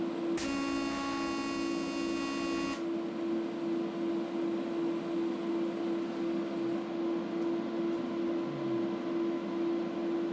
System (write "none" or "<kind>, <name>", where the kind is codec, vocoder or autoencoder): none